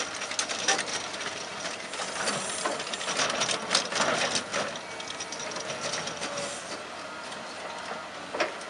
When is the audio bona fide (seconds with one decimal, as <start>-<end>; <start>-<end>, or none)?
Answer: 0.0-0.9; 2.2-8.7